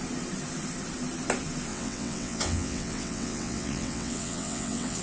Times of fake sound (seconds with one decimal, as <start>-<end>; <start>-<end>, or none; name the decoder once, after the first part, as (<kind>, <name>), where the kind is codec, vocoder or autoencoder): 1.7-5.0 (vocoder, WaveNeXt)